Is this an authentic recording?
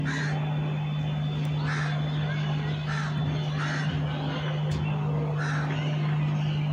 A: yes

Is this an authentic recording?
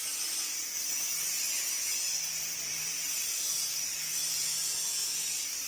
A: yes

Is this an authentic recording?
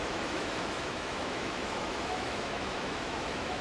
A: no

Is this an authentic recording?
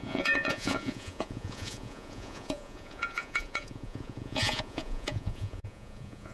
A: no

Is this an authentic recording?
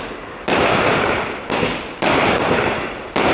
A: yes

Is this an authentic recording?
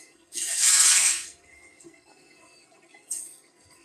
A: no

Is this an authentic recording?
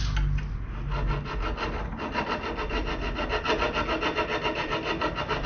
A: yes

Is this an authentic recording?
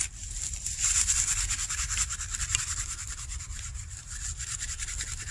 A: yes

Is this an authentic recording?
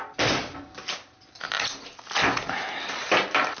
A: yes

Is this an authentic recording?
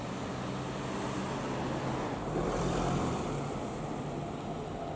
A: yes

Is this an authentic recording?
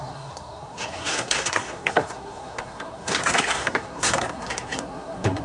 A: no